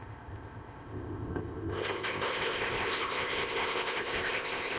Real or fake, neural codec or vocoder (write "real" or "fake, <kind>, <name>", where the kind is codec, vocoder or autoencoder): fake, codec, ZipCodec